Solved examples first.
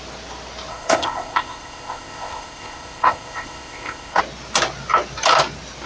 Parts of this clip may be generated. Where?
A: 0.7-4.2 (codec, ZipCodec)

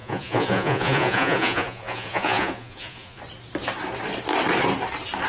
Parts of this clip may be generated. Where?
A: 0.0-3.2 (vocoder, Vocos)

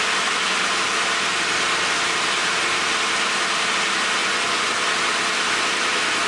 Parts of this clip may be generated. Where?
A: 4.2-4.7 (vocoder, Vocos)

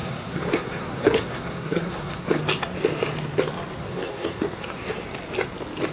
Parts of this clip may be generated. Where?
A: 0.0-2.4 (codec, SNAC); 3.8-4.9

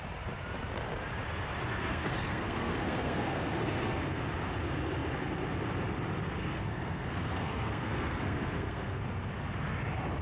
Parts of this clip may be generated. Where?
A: 1.7-4.2 (codec, SNAC); 6.4-9.0

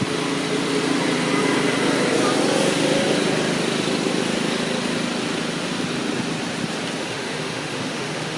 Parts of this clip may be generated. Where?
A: 7.0-8.4 (autoencoder, DAC-VAE)

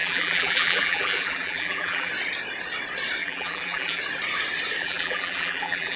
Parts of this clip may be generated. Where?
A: 0.0-2.1 (vocoder, BigVGAN v2); 3.2-4.0; 4.8-6.0

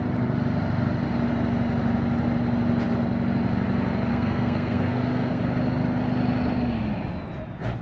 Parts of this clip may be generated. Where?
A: 4.1-5.4 (codec, SNAC)